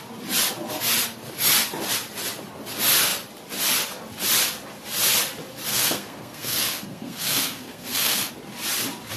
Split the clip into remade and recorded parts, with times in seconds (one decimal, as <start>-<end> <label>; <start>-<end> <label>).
0.0-5.7 recorded; 5.7-8.3 remade; 8.3-9.2 recorded